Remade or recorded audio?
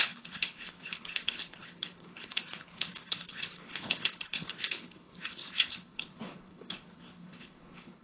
remade